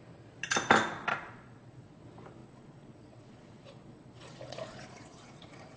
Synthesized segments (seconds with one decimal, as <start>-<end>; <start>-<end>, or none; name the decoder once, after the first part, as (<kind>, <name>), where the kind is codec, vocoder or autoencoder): 1.1-2.0 (vocoder, Vocos); 2.4-5.8